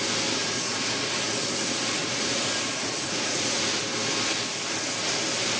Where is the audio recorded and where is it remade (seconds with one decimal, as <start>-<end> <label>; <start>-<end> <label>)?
0.0-0.4 recorded; 0.4-3.8 remade; 3.8-5.6 recorded